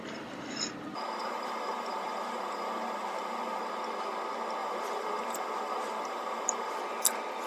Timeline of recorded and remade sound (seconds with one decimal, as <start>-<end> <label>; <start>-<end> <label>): 0.0-1.2 recorded; 1.2-3.6 remade; 3.6-4.6 recorded; 4.6-6.8 remade; 6.8-7.5 recorded